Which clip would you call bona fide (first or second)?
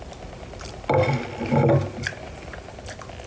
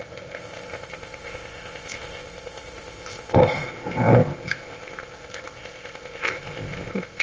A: first